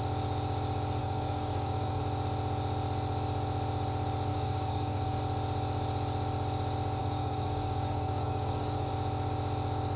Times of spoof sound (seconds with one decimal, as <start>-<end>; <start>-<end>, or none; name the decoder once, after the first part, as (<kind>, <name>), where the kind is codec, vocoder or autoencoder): 1.0-2.0 (codec, DAC); 4.3-5.2; 7.0-8.9